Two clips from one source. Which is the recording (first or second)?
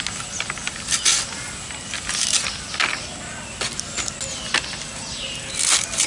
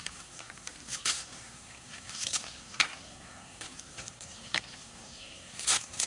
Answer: first